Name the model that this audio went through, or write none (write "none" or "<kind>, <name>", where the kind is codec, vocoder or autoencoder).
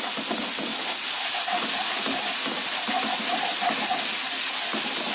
none